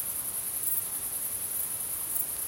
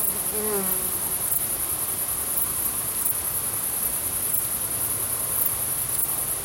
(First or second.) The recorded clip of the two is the second